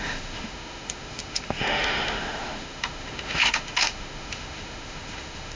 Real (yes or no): no